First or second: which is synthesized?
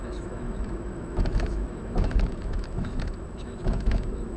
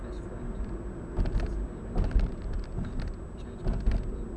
first